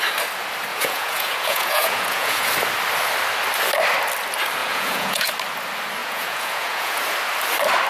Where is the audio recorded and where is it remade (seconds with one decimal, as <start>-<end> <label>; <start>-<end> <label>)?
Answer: 0.0-0.7 recorded; 0.7-2.5 remade; 2.5-4.6 recorded; 4.6-5.3 remade; 5.3-6.0 recorded; 6.0-7.0 remade; 7.0-7.9 recorded